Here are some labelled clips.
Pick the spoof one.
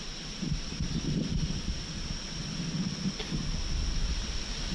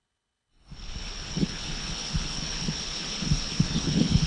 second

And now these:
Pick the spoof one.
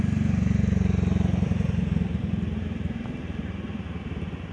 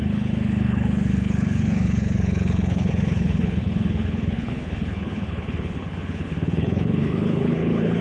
second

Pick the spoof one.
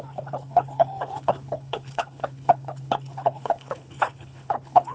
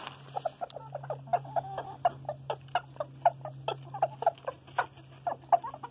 first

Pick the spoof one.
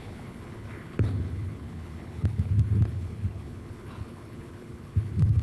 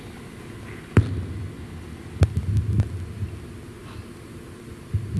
first